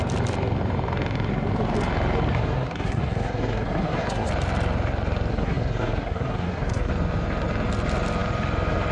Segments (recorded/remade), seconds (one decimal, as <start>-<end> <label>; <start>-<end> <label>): 0.0-2.3 recorded; 2.3-4.3 remade; 4.3-5.3 recorded; 5.3-6.9 remade; 6.9-8.9 recorded